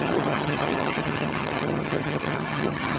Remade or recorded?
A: remade